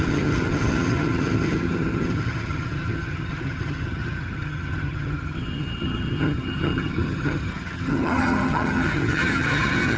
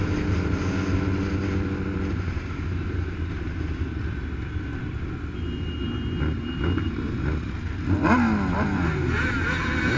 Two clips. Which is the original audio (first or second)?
second